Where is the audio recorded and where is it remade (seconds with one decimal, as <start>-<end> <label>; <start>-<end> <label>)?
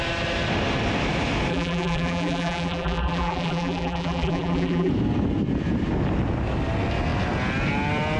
0.0-1.5 recorded; 1.5-4.9 remade; 4.9-8.2 recorded